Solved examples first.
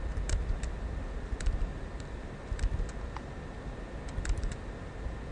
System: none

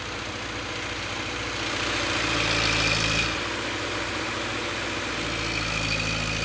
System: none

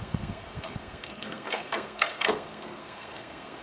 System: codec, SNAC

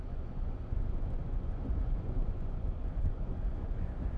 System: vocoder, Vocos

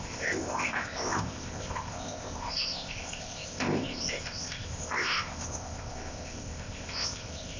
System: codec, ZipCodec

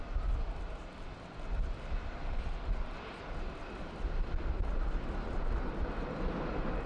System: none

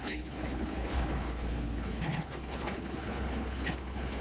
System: codec, HILCodec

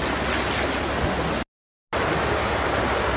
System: none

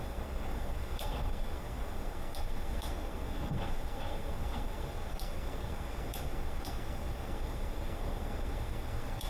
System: codec, SNAC